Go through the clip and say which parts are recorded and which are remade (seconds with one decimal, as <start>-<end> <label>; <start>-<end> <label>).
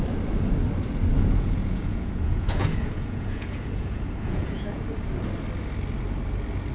0.0-1.1 recorded; 1.1-4.8 remade; 4.8-6.7 recorded